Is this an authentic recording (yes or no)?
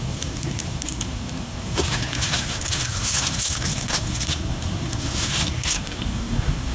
no